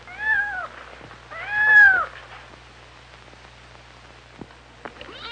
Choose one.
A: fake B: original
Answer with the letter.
B